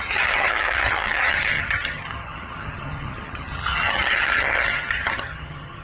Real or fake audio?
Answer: fake